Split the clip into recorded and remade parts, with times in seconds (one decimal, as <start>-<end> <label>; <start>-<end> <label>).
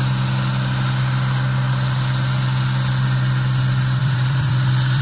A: 0.0-4.0 recorded; 4.0-5.0 remade